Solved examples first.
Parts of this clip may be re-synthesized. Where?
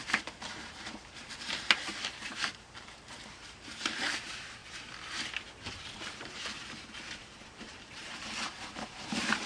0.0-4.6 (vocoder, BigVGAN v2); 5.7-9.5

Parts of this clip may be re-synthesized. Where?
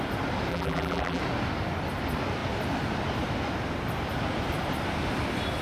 0.5-1.2 (vocoder, BigVGAN v2)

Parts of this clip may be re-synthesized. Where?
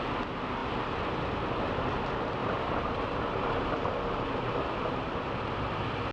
2.4-5.2 (vocoder, BigVGAN v2)